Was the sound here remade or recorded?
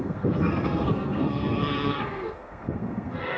remade